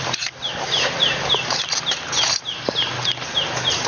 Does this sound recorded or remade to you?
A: recorded